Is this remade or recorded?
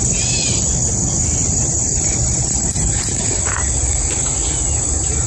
recorded